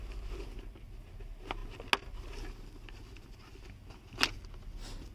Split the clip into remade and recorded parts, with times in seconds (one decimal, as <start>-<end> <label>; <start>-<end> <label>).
0.0-5.1 recorded